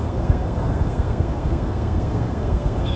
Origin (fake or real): fake